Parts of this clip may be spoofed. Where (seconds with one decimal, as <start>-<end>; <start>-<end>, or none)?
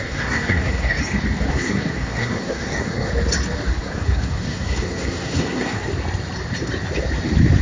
0.0-1.0; 1.5-3.1; 3.7-5.9